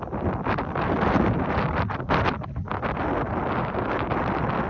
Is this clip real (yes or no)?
yes